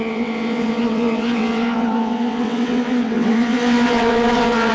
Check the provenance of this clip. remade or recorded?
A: remade